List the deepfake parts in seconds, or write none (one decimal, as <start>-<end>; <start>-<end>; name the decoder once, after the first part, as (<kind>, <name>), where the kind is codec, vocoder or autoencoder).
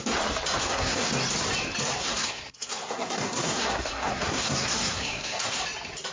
0.6-1.1 (codec, SNAC); 2.0-5.6